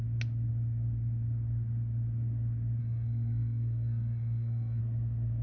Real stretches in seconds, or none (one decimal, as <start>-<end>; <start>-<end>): 0.0-2.8; 4.8-5.4